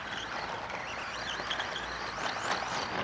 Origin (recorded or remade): recorded